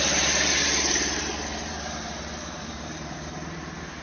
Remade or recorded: remade